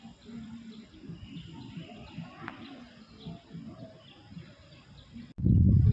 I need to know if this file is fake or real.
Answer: real